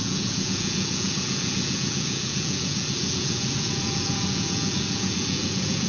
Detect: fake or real fake